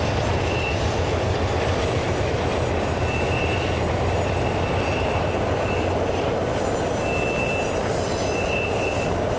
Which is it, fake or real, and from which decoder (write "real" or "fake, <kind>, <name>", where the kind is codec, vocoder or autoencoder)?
real